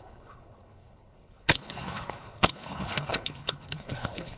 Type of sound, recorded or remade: remade